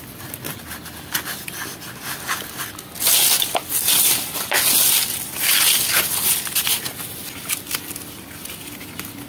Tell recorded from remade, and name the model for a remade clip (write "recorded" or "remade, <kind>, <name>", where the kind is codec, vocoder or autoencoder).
recorded